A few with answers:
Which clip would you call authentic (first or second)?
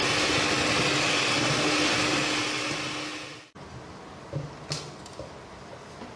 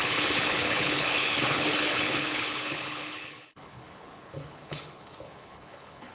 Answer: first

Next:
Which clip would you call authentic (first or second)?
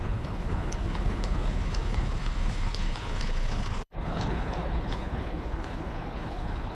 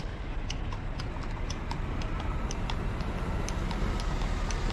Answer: second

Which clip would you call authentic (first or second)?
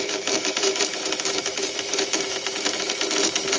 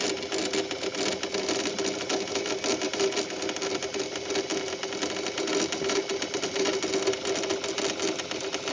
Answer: second